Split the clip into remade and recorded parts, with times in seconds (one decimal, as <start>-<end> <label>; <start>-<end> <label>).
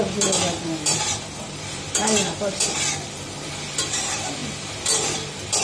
0.0-4.4 remade; 4.4-5.6 recorded